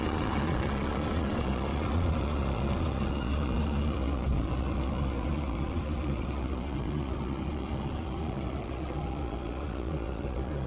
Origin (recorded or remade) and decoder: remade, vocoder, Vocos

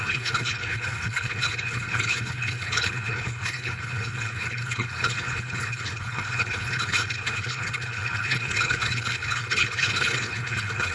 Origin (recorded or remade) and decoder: remade, codec, HILCodec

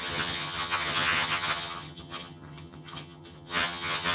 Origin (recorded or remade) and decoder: remade, vocoder, HiFi-GAN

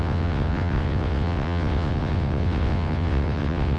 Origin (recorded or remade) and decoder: remade, vocoder, WaveNeXt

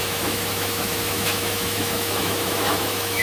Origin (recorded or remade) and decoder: remade, autoencoder, DAC-VAE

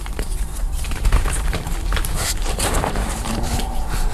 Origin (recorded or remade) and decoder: remade, vocoder, BigVGAN v2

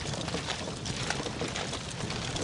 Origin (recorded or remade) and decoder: remade, vocoder, BigVGAN v2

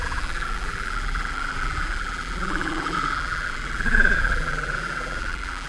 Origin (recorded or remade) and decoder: remade, vocoder, BigVGAN v2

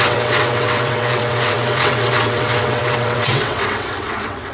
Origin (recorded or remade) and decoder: remade, vocoder, WaveNeXt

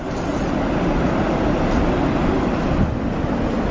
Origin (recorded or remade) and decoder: recorded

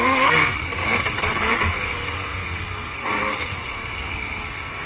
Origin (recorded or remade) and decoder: remade, codec, SNAC